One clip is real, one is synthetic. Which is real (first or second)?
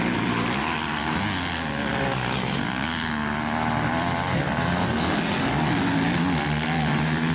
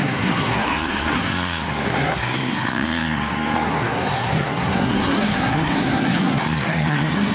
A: first